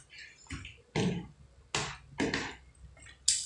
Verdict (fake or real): real